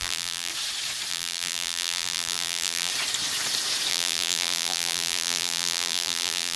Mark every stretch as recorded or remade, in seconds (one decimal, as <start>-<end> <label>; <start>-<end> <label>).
0.0-0.5 remade; 0.5-1.1 recorded; 1.1-2.9 remade; 2.9-3.9 recorded; 3.9-6.6 remade